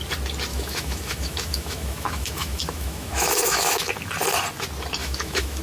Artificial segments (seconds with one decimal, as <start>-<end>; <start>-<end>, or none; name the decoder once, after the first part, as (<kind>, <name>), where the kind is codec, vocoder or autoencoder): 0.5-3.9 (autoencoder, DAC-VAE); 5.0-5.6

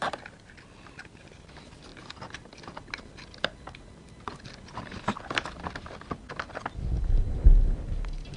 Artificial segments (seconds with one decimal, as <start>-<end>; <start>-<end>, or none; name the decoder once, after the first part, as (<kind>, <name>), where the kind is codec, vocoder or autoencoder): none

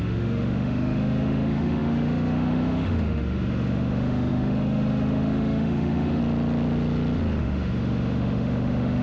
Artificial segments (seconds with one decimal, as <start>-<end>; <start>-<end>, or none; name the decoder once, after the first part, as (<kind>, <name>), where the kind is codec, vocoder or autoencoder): 0.0-6.2 (autoencoder, DAC-VAE); 7.4-9.0